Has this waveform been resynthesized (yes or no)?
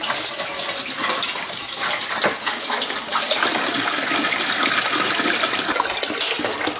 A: no